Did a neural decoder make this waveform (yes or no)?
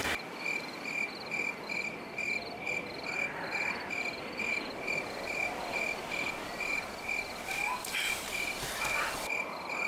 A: no